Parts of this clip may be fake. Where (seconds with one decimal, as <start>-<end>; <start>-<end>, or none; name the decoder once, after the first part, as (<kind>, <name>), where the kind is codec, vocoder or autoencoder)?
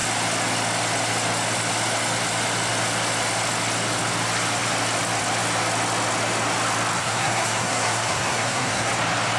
7.0-8.9 (codec, SNAC)